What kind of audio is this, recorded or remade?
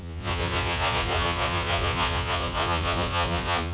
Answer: remade